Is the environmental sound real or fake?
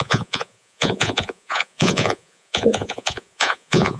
fake